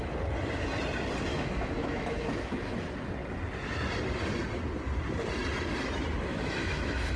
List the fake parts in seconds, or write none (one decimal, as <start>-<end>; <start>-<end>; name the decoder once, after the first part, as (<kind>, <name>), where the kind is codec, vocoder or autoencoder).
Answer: 1.3-2.7 (autoencoder, DAC-VAE); 6.3-7.2